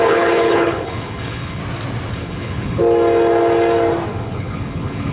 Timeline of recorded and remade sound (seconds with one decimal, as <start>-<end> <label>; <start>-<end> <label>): 0.0-1.6 remade; 1.6-2.1 recorded; 2.1-2.8 remade; 2.8-4.1 recorded; 4.1-5.1 remade